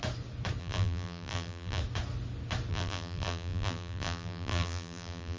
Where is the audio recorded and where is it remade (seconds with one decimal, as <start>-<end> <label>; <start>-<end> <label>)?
0.0-0.6 recorded; 0.6-1.8 remade; 1.8-2.7 recorded; 2.7-5.4 remade